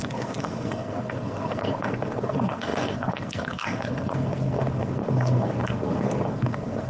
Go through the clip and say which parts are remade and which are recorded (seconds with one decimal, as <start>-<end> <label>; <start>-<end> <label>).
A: 0.0-6.9 remade